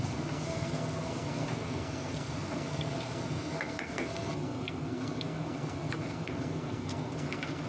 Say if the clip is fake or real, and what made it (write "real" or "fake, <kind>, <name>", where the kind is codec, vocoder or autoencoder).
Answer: fake, codec, SNAC